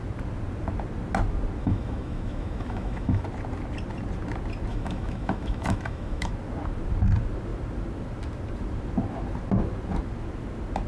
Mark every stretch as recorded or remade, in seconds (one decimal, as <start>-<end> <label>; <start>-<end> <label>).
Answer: 0.0-1.6 recorded; 1.6-3.2 remade; 3.2-4.7 recorded; 4.7-6.3 remade; 6.3-10.9 recorded